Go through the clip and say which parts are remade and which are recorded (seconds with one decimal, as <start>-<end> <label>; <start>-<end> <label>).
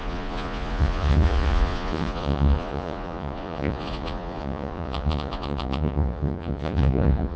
0.0-7.4 remade